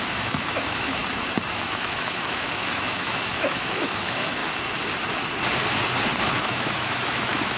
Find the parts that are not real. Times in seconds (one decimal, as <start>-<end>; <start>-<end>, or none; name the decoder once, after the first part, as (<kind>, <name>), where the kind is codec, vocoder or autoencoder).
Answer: 0.0-1.0 (autoencoder, DAC-VAE); 1.5-4.4; 6.2-7.6